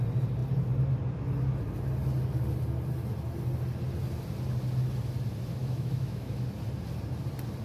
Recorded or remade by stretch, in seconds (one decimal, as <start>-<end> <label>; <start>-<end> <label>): 0.0-5.6 recorded; 5.6-6.3 remade; 6.3-7.6 recorded